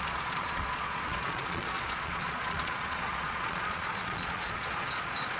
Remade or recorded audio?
remade